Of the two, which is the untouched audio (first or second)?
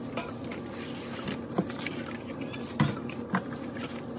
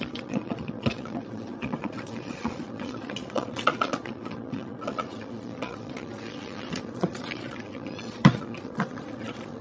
first